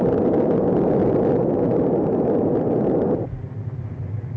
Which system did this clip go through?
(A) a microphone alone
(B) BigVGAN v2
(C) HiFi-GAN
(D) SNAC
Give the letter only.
A